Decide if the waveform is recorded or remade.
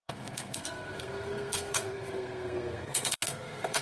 remade